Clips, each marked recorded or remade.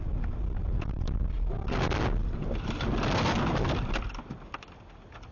recorded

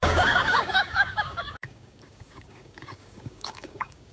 remade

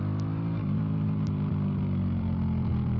remade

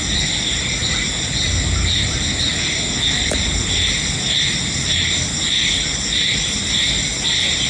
recorded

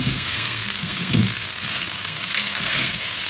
remade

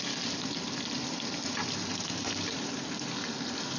remade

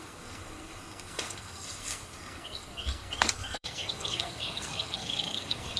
remade